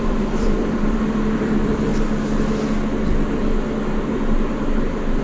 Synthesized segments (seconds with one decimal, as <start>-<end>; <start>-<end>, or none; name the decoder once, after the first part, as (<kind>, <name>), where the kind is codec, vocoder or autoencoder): 0.0-1.9 (vocoder, BigVGAN v2)